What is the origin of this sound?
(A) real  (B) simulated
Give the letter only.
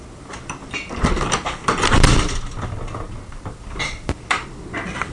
A